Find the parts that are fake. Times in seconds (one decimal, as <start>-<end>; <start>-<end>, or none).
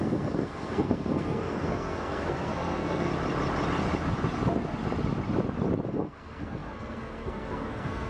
0.0-3.1; 5.9-8.1